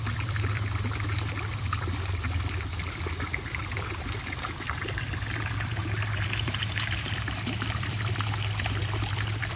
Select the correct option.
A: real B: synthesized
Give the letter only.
B